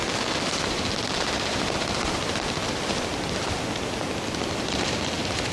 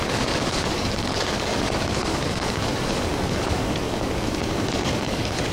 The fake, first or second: second